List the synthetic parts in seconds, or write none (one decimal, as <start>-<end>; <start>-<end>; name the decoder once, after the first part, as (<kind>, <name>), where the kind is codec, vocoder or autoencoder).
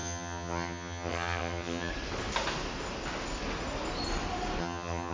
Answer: 0.0-1.9 (vocoder, HiFi-GAN); 4.6-5.1